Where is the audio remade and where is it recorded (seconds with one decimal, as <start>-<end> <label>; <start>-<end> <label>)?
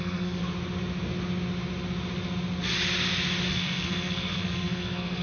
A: 0.0-0.4 remade; 0.4-3.5 recorded; 3.5-5.2 remade